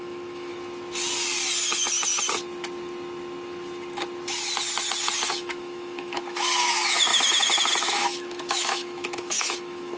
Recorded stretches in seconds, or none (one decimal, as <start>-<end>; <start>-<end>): 0.5-5.3